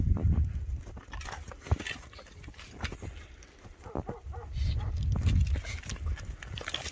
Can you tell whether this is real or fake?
real